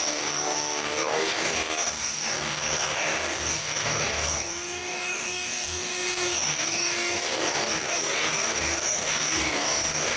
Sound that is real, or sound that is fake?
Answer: fake